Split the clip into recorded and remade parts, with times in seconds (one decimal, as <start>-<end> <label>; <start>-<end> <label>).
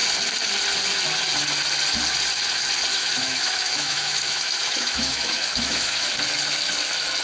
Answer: 0.0-2.9 recorded; 2.9-6.1 remade; 6.1-7.2 recorded